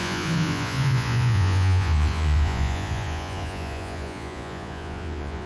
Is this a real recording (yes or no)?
no